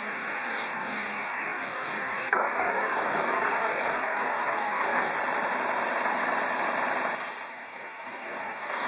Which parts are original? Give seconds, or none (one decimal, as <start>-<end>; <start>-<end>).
5.1-7.5